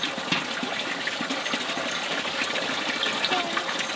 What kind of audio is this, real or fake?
real